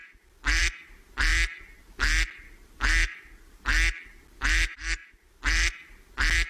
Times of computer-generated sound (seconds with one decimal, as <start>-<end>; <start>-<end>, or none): none